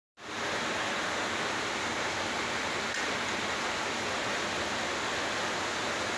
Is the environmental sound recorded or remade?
recorded